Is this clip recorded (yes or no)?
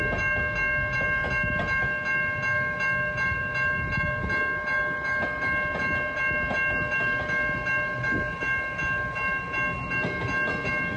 yes